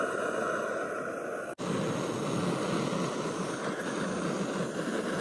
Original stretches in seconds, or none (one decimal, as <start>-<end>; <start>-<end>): 0.0-5.2